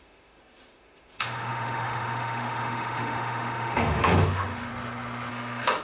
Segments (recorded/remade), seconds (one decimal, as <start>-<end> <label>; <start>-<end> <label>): 0.0-4.7 remade; 4.7-5.3 recorded; 5.3-5.8 remade